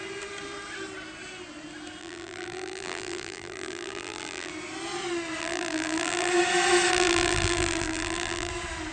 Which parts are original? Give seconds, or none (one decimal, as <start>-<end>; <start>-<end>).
0.0-2.0; 4.5-5.4; 6.3-6.9; 8.5-8.9

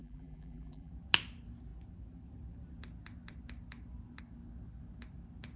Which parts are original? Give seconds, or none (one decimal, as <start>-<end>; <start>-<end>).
0.9-5.6

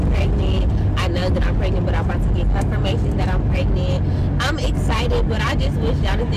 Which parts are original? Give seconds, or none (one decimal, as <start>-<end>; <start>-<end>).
0.0-6.4

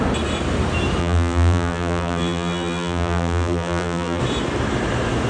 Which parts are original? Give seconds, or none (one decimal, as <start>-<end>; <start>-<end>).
0.0-1.0; 4.2-5.3